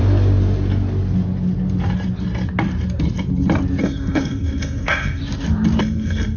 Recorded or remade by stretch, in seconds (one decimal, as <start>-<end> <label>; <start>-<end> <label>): 0.0-3.8 recorded; 3.8-5.2 remade; 5.2-5.8 recorded; 5.8-6.4 remade